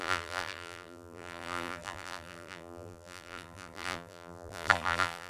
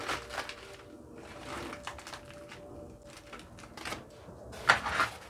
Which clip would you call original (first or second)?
second